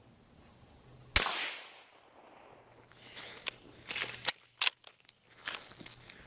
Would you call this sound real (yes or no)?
yes